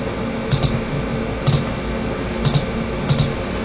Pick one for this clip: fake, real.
real